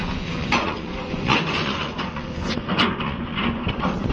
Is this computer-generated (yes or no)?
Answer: yes